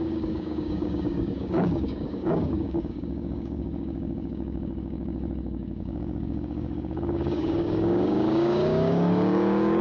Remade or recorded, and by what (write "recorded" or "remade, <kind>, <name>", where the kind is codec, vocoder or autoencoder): remade, codec, DAC